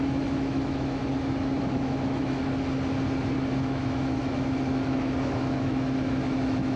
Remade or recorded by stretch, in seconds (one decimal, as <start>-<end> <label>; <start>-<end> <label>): 0.0-1.0 remade; 1.0-1.6 recorded; 1.6-2.4 remade; 2.4-3.6 recorded; 3.6-6.8 remade